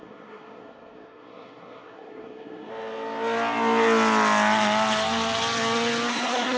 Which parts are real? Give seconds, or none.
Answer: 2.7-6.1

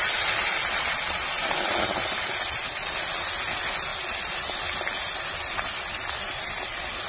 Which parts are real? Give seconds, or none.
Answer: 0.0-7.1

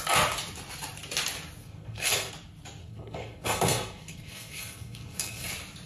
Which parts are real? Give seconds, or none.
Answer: 0.0-1.6; 2.3-2.8; 5.5-5.9